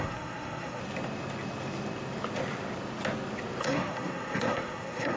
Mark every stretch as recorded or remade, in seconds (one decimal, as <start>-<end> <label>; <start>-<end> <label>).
0.0-0.8 remade; 0.8-3.6 recorded; 3.6-5.2 remade